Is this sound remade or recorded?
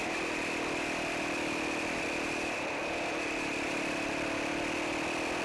remade